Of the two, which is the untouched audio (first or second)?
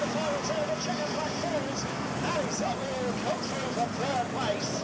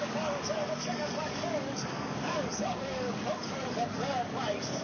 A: first